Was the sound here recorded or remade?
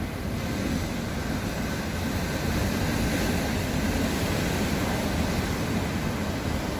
recorded